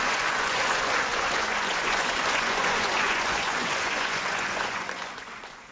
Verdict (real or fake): fake